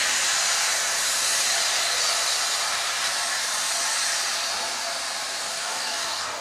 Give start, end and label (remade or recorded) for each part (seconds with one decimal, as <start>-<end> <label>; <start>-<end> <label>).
0.0-5.5 recorded; 5.5-6.4 remade